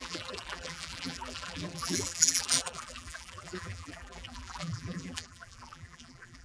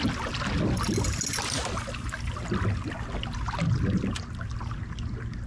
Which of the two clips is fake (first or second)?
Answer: first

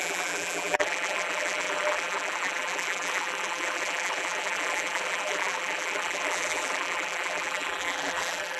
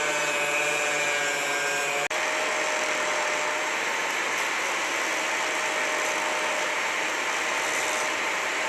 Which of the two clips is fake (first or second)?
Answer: first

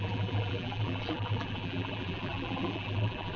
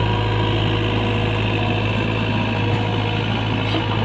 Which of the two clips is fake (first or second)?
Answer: first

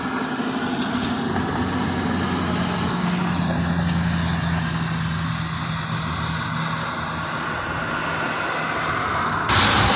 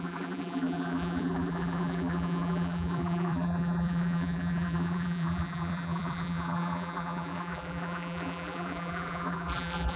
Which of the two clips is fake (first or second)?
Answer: second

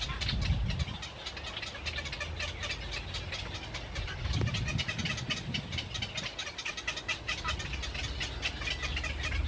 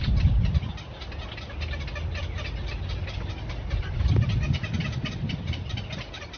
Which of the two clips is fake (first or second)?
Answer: second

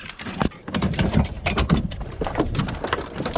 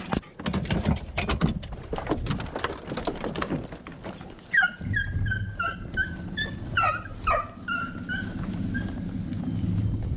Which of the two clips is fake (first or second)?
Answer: first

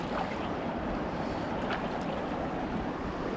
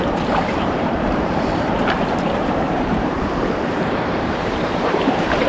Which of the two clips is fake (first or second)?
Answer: second